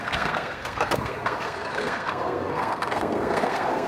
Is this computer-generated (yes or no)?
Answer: yes